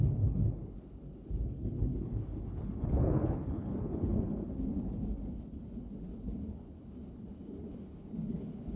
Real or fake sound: fake